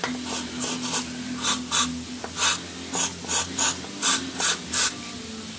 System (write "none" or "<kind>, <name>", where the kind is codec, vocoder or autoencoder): none